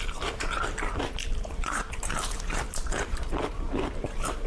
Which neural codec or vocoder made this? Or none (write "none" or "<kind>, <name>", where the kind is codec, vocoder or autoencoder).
vocoder, BigVGAN v2